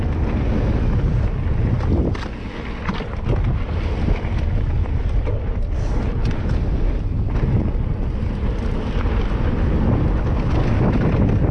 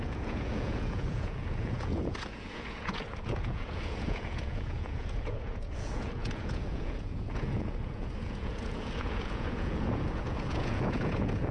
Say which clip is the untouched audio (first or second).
first